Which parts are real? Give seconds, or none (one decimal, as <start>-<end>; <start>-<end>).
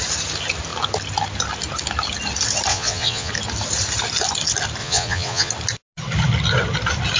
0.0-2.7; 3.3-4.8; 5.5-7.2